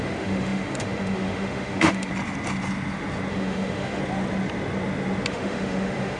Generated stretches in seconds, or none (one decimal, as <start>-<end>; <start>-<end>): 0.0-2.1; 3.3-4.0; 5.3-6.2